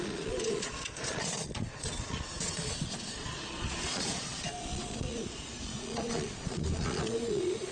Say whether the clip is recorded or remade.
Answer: remade